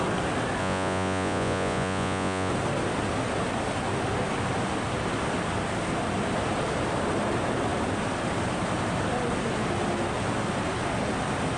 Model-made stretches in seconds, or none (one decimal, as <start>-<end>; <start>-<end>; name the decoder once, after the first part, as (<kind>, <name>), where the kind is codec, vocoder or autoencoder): 0.6-2.5 (vocoder, Vocos)